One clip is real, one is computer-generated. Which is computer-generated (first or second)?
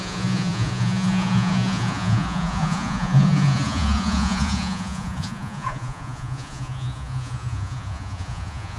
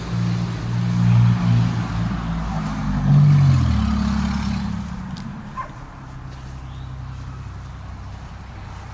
first